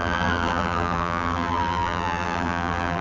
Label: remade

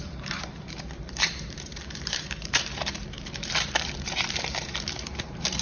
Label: remade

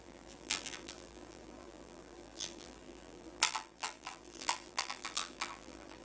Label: remade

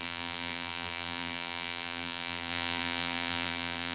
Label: remade